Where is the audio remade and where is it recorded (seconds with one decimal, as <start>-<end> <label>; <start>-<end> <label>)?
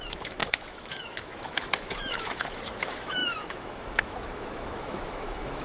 0.0-5.6 remade